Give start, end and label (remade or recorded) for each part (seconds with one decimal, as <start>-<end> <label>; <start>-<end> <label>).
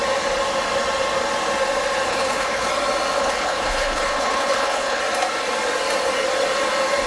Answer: 0.0-2.1 recorded; 2.1-2.7 remade; 2.7-3.2 recorded; 3.2-5.0 remade; 5.0-7.1 recorded